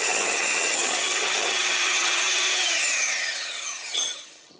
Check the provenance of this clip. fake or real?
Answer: fake